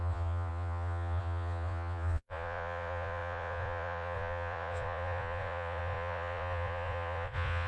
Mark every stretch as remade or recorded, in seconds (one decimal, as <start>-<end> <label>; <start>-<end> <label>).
0.0-7.7 remade